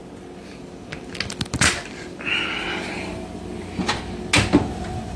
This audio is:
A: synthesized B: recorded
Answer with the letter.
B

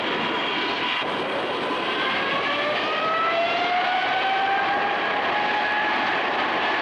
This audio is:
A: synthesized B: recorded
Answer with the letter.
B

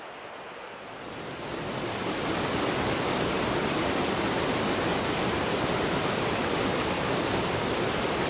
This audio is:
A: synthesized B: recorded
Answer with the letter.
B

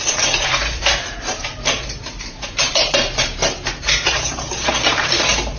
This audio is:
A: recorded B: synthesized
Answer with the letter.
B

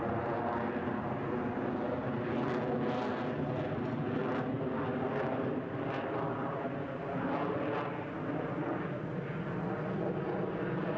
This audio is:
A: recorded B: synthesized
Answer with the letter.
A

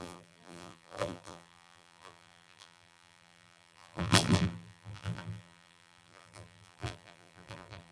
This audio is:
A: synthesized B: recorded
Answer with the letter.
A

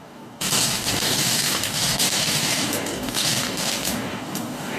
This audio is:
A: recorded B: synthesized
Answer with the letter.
B